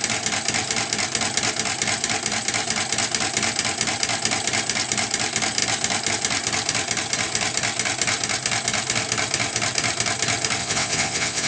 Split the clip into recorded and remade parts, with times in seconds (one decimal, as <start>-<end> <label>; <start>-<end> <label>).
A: 0.0-10.6 recorded; 10.6-11.5 remade